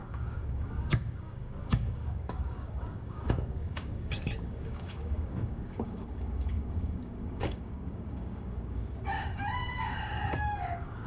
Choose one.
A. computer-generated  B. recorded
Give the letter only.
A